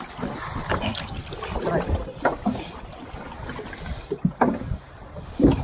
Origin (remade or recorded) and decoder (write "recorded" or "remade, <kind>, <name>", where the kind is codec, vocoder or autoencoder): recorded